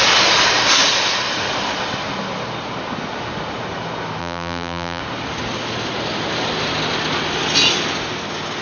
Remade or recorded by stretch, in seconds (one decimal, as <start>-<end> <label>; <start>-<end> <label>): 0.0-4.2 recorded; 4.2-5.0 remade; 5.0-8.6 recorded